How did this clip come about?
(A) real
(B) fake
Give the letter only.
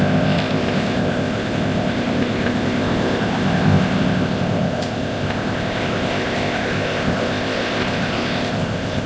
B